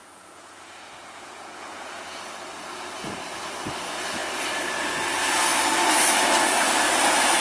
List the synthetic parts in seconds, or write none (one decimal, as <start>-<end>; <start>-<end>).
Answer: 0.0-2.3